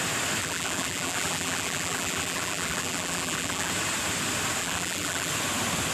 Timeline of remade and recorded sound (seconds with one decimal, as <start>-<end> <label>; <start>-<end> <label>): 0.0-0.4 recorded; 0.4-3.7 remade; 3.7-4.6 recorded; 4.6-5.3 remade; 5.3-5.9 recorded